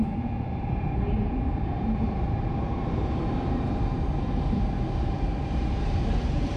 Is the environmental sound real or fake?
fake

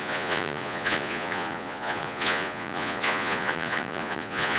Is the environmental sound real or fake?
fake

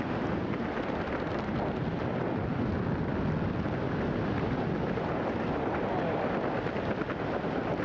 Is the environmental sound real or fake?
real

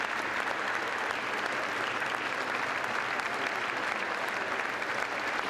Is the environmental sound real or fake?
fake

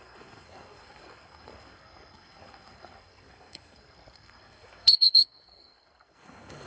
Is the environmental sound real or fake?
fake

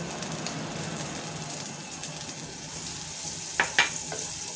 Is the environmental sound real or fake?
real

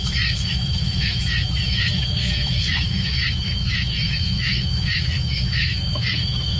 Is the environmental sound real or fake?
fake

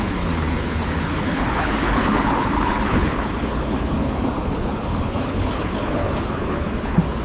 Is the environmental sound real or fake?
fake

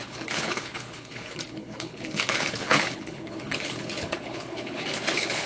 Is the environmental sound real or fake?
fake